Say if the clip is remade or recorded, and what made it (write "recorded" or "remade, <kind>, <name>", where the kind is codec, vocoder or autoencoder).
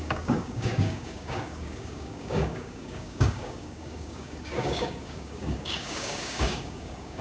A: remade, codec, DAC